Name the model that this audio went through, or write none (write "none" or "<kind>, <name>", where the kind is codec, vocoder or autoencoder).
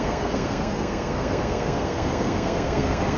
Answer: codec, SNAC